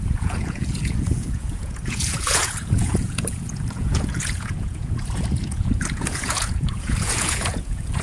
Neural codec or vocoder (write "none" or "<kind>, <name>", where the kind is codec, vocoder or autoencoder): vocoder, Vocos